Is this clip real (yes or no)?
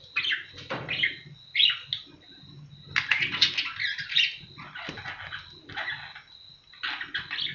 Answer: yes